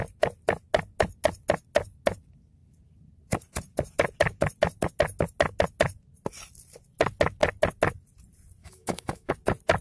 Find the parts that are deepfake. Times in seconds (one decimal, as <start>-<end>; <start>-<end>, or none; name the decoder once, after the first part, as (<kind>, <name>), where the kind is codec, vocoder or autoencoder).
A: 8.6-9.3 (autoencoder, DAC-VAE)